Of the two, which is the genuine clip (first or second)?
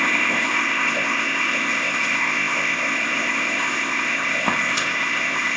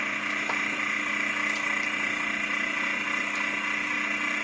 second